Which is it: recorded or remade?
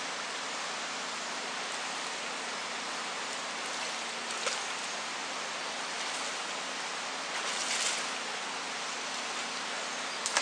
recorded